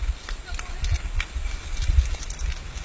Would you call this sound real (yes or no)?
yes